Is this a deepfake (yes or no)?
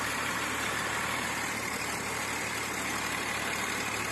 yes